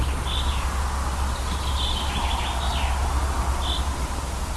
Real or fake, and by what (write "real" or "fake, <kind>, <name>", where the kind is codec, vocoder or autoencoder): real